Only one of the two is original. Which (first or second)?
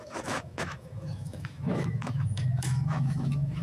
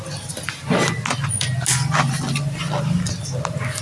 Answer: second